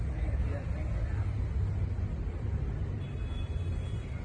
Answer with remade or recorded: recorded